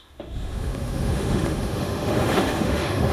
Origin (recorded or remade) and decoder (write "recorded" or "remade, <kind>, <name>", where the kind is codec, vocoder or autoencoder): remade, autoencoder, DAC-VAE